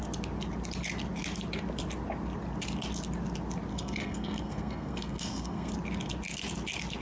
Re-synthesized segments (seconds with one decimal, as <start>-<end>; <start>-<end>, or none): 3.7-5.7